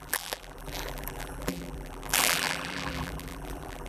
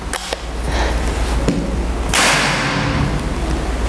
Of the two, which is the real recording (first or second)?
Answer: second